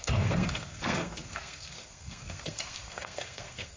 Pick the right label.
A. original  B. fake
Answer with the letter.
B